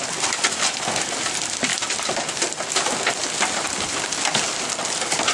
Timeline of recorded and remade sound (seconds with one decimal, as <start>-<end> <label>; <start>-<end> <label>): 0.0-5.3 remade